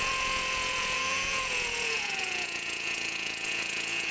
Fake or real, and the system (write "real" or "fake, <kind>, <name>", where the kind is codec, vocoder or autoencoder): fake, vocoder, Vocos